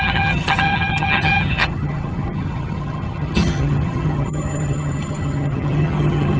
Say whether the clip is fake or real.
fake